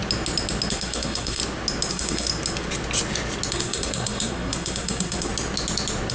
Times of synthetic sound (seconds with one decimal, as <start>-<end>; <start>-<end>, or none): 0.7-1.4; 1.9-2.3; 3.5-5.3